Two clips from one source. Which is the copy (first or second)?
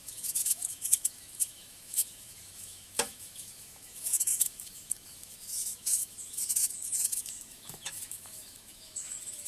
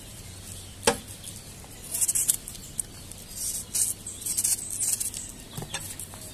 first